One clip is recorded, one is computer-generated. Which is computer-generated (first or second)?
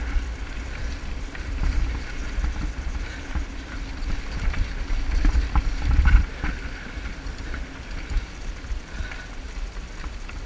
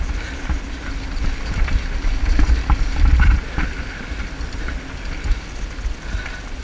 first